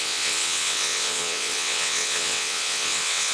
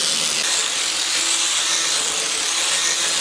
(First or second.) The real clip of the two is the second